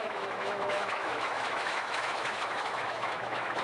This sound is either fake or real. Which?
fake